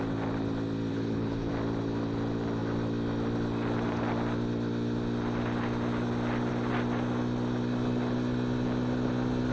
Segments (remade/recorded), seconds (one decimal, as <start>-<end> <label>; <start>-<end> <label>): 0.0-0.9 recorded; 0.9-1.5 remade; 1.5-9.5 recorded